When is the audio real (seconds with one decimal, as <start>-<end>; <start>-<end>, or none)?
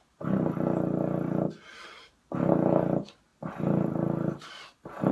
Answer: 0.0-1.7; 2.5-3.3